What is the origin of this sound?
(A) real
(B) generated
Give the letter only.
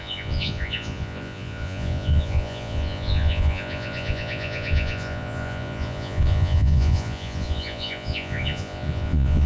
B